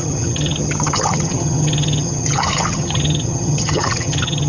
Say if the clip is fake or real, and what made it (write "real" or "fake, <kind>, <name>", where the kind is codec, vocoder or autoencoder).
fake, vocoder, HiFi-GAN